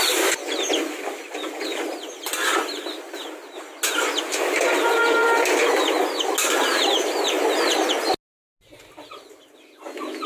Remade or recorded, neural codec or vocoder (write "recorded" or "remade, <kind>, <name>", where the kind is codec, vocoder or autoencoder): recorded